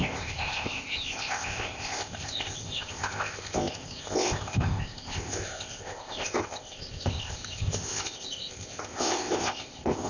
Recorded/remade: remade